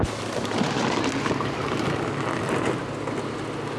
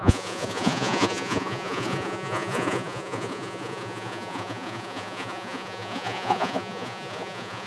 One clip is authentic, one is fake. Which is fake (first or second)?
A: second